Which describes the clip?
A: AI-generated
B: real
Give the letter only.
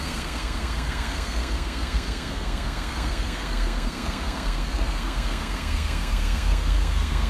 A